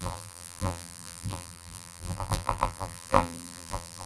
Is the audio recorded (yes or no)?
no